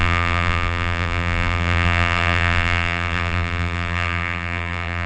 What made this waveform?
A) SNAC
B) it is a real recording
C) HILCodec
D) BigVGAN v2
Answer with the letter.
D